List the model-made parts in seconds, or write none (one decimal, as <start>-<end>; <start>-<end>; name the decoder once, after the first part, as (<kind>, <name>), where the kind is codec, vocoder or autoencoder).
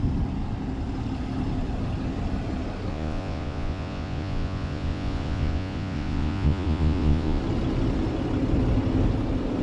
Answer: 2.9-7.4 (vocoder, Vocos)